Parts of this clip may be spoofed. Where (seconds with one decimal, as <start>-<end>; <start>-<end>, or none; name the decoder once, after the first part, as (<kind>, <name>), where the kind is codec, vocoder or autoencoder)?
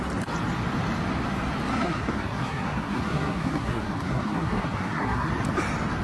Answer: 1.7-5.3 (codec, SNAC)